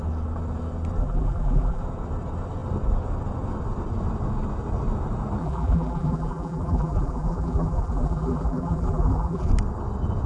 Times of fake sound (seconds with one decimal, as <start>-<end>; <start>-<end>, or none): 1.0-1.8; 5.4-9.5